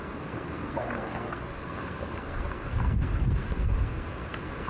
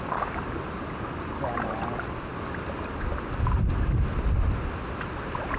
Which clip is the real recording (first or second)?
second